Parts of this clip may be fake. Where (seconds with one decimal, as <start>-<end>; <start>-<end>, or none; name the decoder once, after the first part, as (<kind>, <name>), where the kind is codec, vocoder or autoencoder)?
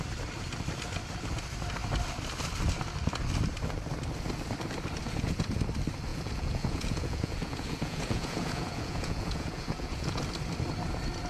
5.0-5.6 (vocoder, Vocos); 6.1-10.2